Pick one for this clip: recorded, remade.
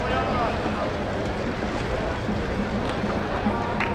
recorded